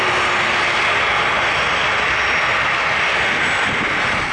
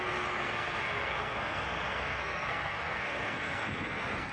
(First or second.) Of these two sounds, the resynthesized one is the second